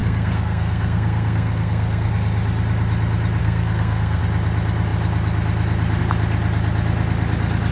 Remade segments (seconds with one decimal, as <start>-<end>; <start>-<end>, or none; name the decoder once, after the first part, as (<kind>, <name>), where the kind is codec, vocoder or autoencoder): 0.0-2.1 (codec, SNAC); 3.4-4.2